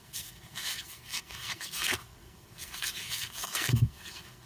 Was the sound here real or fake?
fake